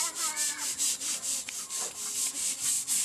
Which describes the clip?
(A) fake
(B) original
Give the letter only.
B